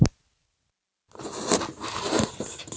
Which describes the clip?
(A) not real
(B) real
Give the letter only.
B